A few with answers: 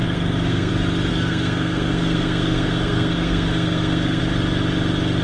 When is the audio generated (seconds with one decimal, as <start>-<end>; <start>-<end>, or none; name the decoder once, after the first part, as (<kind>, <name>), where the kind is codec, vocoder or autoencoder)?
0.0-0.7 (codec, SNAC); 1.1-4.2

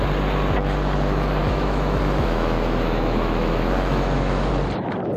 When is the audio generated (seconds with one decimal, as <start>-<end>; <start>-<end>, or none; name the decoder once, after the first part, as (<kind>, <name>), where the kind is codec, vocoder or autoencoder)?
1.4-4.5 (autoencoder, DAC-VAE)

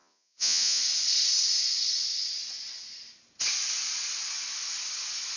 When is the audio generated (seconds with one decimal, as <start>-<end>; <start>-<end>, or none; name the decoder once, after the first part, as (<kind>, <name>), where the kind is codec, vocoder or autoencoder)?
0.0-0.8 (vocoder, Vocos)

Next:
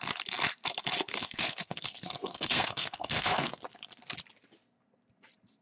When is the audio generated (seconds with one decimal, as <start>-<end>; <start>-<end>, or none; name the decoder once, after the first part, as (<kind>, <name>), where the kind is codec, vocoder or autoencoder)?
1.1-3.6 (codec, SNAC)

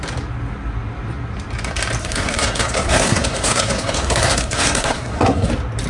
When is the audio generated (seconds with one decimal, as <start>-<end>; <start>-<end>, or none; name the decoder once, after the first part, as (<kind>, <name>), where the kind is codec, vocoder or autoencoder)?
2.0-5.5 (codec, SNAC)

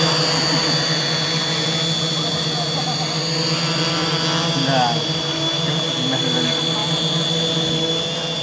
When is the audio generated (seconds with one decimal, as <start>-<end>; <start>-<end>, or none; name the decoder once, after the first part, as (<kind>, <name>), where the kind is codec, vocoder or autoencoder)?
none

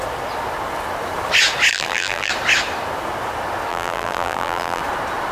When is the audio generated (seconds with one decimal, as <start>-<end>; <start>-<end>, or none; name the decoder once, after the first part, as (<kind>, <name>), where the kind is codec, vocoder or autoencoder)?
1.7-2.3 (vocoder, BigVGAN v2); 3.7-4.8